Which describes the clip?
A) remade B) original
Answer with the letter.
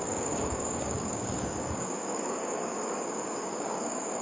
A